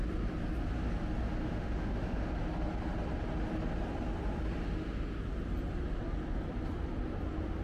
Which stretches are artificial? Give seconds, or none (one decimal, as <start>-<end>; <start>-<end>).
1.4-2.3